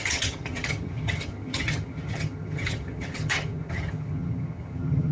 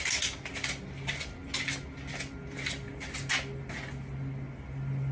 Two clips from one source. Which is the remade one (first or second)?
first